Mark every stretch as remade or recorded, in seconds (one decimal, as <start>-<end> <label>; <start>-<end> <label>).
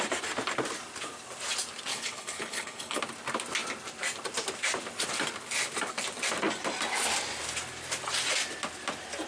0.0-1.9 recorded; 1.9-3.0 remade; 3.0-9.3 recorded